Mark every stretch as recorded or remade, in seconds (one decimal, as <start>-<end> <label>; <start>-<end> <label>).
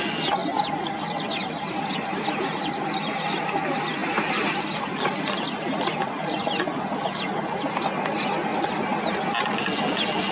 0.0-10.3 recorded